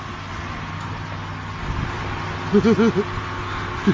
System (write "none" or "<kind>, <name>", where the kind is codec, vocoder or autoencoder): none